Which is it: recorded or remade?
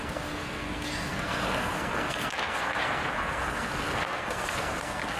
remade